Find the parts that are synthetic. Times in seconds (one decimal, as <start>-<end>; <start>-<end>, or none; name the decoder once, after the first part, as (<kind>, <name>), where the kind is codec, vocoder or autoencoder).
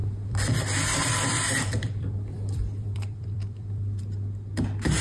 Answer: 0.0-0.5 (vocoder, BigVGAN v2); 1.0-4.0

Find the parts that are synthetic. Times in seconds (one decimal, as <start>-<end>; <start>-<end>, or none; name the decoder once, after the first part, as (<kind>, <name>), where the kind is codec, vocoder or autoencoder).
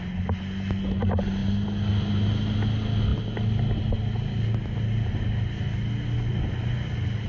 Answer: none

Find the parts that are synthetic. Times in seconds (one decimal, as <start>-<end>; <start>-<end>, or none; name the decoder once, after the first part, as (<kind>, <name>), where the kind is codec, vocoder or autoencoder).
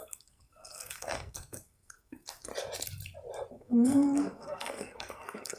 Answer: 0.0-2.5 (codec, SNAC); 3.5-5.6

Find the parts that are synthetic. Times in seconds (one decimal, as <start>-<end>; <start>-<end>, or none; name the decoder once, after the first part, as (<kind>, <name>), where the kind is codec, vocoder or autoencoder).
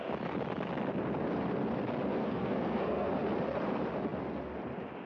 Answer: 2.2-3.1 (codec, SNAC)